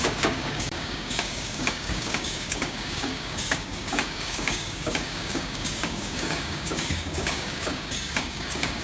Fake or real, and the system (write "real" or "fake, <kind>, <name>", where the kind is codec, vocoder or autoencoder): fake, codec, DAC